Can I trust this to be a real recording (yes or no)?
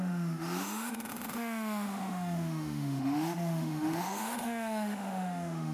no